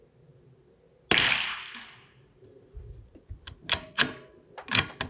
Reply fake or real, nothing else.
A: real